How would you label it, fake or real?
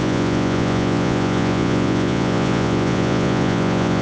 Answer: fake